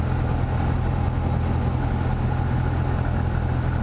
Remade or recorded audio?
recorded